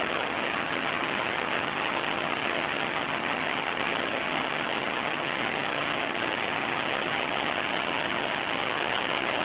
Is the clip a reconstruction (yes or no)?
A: yes